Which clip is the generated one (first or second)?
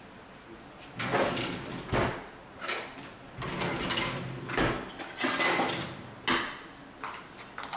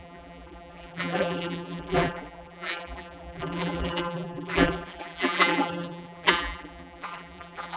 second